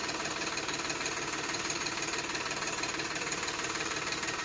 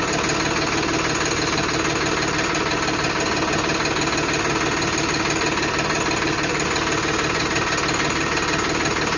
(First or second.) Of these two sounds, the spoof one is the first